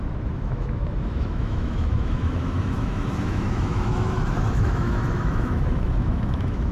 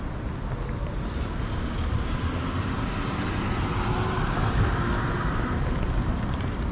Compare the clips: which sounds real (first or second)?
second